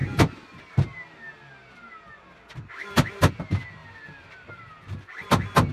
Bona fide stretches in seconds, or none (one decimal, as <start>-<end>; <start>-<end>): 0.0-3.8; 4.6-5.7